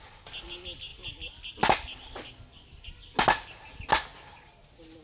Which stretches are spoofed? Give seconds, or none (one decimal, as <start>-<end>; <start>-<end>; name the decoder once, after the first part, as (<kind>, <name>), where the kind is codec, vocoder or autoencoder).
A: none